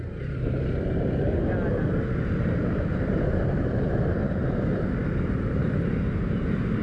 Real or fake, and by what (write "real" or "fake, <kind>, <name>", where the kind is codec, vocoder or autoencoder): real